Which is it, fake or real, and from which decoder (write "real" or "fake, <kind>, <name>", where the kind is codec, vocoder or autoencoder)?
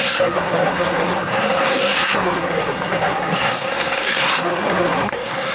fake, codec, SNAC